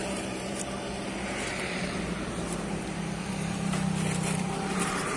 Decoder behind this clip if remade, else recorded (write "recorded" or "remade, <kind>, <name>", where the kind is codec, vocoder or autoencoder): remade, vocoder, BigVGAN v2